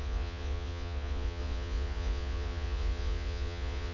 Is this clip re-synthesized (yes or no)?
yes